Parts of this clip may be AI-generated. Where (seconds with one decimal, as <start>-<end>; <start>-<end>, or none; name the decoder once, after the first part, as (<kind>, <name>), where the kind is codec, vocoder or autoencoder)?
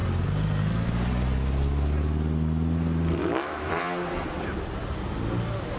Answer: 3.2-3.7 (autoencoder, DAC-VAE)